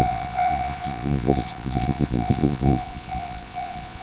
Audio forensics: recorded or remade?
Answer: remade